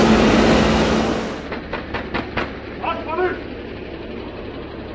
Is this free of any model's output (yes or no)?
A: yes